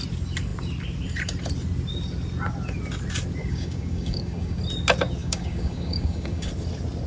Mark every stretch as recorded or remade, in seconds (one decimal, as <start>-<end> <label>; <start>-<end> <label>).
0.0-3.4 recorded; 3.4-4.6 remade; 4.6-5.2 recorded; 5.2-6.5 remade; 6.5-7.1 recorded